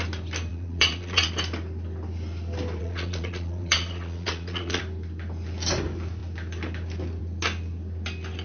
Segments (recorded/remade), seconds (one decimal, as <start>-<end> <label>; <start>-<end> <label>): 0.0-0.5 recorded; 0.5-1.3 remade; 1.3-2.8 recorded; 2.8-4.8 remade; 4.8-8.4 recorded